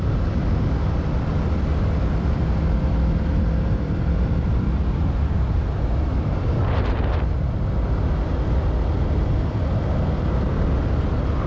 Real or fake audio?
fake